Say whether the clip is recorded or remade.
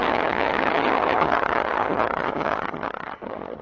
remade